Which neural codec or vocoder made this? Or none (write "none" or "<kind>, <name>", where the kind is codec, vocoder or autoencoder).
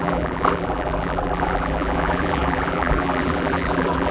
vocoder, BigVGAN v2